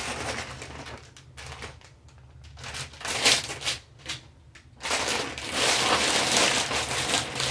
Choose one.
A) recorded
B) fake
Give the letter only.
A